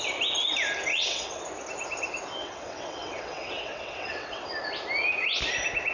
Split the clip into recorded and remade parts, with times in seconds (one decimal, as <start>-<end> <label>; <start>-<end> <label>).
0.0-0.9 recorded; 0.9-1.4 remade; 1.4-2.4 recorded; 2.4-4.5 remade; 4.5-5.9 recorded